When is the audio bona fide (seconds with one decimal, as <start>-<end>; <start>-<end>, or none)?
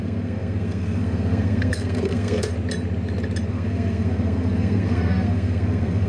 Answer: 2.5-3.5